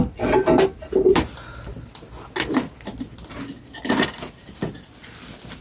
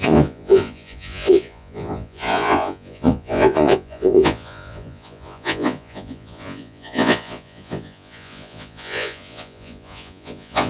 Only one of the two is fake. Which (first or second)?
second